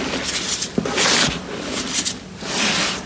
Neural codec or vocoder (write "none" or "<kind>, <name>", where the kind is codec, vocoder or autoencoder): none